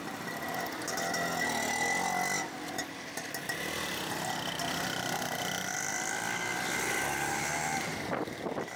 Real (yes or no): yes